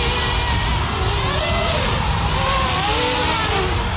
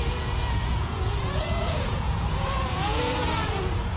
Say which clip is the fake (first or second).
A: second